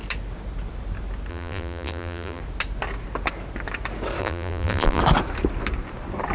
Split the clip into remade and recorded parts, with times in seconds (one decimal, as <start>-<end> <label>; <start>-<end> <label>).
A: 0.0-1.3 recorded; 1.3-2.4 remade; 2.4-4.2 recorded; 4.2-5.0 remade; 5.0-6.3 recorded